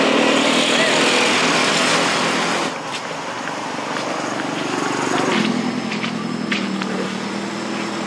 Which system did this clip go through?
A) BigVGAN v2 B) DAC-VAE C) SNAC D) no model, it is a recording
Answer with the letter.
D